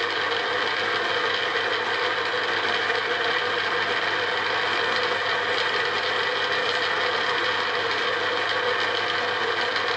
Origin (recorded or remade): recorded